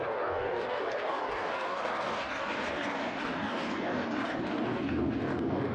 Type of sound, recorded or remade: remade